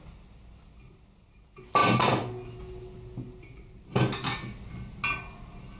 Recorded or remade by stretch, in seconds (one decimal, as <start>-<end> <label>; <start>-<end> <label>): 0.0-5.8 recorded